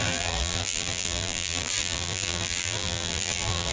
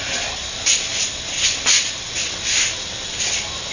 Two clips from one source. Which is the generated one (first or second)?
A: first